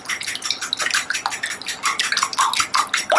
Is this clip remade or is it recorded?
recorded